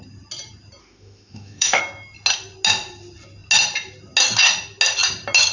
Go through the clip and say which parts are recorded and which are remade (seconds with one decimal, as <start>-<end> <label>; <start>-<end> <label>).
0.0-0.8 recorded; 0.8-1.8 remade; 1.8-5.5 recorded